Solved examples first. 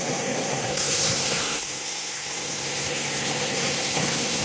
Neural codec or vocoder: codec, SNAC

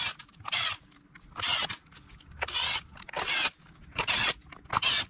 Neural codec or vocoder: none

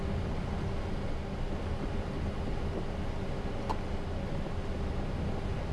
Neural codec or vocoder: none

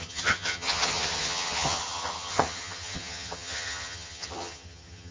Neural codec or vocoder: vocoder, HiFi-GAN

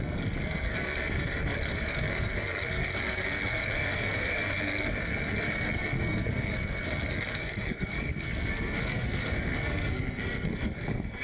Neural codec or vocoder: codec, SNAC